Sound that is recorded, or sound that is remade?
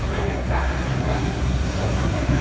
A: remade